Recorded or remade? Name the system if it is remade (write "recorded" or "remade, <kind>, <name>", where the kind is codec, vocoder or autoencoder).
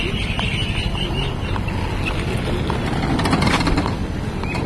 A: recorded